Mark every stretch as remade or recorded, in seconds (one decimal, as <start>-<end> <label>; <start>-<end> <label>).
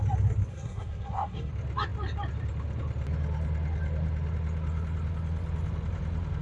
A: 0.0-0.5 recorded; 0.5-1.5 remade; 1.5-6.4 recorded